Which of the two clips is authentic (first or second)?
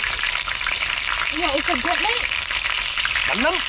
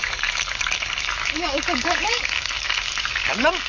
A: first